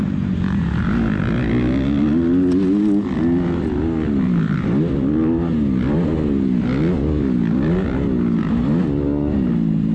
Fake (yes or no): no